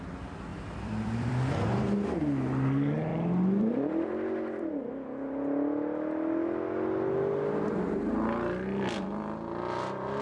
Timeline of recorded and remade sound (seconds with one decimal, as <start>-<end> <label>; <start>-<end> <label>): 0.0-0.5 recorded; 0.5-1.3 remade; 1.3-3.1 recorded; 3.1-4.9 remade; 4.9-10.2 recorded